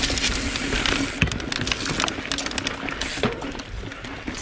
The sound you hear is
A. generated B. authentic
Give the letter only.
B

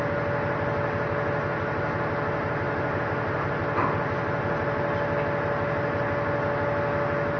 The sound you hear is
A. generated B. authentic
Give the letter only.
B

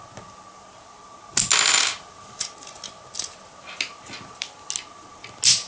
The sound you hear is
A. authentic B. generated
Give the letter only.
A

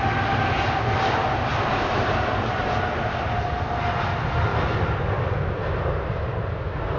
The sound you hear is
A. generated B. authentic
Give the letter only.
B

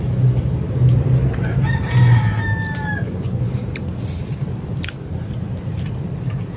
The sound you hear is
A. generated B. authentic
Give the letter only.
B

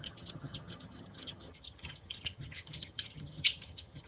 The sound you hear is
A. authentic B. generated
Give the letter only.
B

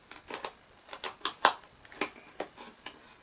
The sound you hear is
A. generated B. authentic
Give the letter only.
B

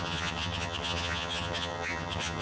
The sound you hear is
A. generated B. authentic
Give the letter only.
A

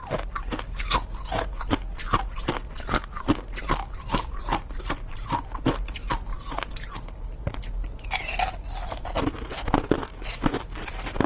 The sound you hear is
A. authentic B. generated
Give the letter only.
A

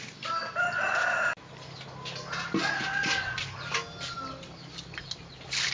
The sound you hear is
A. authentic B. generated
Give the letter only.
A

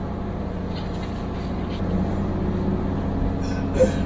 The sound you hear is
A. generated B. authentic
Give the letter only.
B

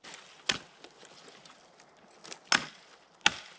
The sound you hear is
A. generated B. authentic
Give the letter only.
B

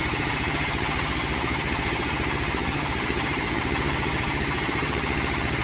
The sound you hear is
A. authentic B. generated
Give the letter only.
B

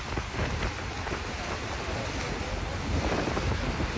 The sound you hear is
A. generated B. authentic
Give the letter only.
B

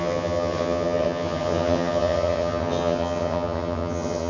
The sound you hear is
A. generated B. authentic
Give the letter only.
A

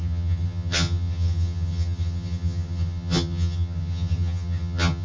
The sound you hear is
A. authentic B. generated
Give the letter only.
B